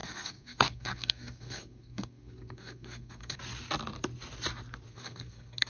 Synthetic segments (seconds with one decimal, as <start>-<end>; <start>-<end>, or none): 0.0-3.4; 4.9-5.7